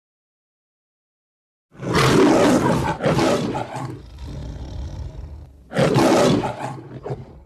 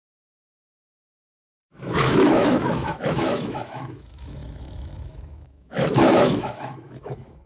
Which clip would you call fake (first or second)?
second